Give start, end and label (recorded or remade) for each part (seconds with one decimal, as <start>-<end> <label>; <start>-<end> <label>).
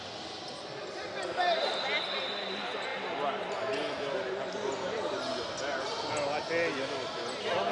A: 0.0-7.7 recorded